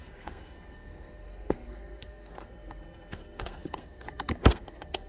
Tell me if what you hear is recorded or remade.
remade